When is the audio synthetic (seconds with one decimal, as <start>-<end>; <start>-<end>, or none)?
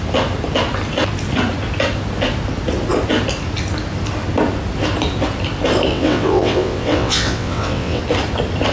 5.9-8.0